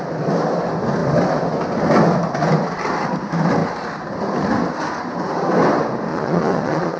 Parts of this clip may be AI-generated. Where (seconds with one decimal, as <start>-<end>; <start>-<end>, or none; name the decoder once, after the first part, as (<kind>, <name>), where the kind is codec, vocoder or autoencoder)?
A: 6.1-7.0 (vocoder, Vocos)

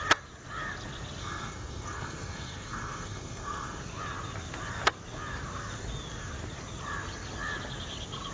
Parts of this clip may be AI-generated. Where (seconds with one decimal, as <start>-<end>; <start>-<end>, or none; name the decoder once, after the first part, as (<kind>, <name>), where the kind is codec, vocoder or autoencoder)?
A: 1.2-3.8 (codec, SNAC)

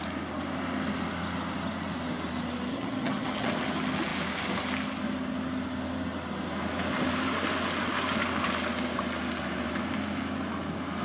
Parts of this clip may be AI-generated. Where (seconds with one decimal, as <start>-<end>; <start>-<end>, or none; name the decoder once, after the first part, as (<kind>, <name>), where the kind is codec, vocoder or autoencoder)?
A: 2.7-3.5 (vocoder, HiFi-GAN)

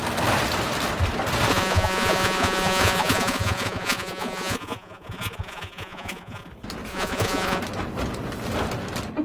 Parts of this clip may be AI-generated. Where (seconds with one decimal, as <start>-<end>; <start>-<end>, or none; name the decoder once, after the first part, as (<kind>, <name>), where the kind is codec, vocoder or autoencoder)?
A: 1.5-6.5 (vocoder, Vocos); 6.9-7.6

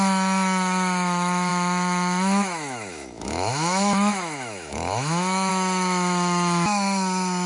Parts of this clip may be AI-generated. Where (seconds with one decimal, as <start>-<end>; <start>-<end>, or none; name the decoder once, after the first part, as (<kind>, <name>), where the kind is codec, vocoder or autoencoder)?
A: 0.0-7.5 (autoencoder, DAC-VAE)

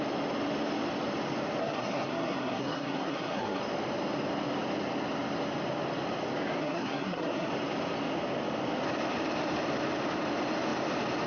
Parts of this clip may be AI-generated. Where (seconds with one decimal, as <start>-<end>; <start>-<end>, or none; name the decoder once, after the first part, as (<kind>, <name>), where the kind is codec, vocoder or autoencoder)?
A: 1.6-3.6 (codec, SNAC); 6.6-7.5

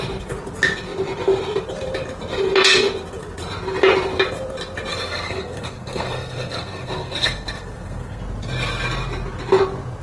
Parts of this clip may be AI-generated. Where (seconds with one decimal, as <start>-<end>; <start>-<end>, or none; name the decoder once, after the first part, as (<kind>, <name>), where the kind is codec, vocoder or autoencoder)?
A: 4.9-8.2 (codec, SNAC)